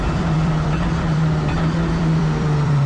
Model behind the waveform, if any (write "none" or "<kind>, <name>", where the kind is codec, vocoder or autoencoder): vocoder, BigVGAN v2